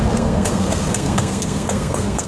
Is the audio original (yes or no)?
no